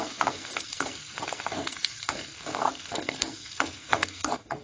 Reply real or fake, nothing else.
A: fake